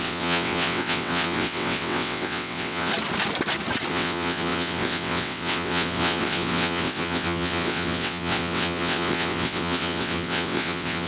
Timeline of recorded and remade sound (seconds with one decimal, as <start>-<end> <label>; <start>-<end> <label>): 0.0-2.9 remade; 2.9-3.9 recorded; 3.9-11.1 remade